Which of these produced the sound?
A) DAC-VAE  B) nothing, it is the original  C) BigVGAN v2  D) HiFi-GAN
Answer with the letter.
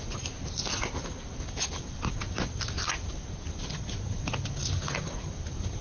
B